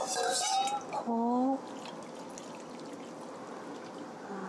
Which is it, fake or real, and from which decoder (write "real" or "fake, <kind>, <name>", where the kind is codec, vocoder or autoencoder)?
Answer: real